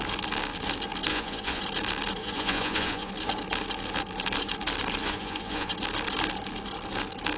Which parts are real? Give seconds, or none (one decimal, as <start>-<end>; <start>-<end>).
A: 0.0-1.1; 1.6-2.2; 3.1-5.0; 5.7-7.4